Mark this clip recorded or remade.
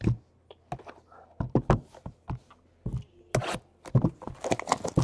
recorded